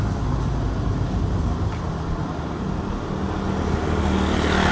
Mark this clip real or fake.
real